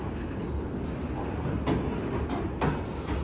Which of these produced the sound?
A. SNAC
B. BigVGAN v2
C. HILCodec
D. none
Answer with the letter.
D